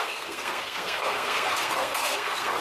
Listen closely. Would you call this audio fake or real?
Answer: fake